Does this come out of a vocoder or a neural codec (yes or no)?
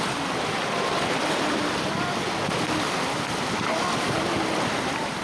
no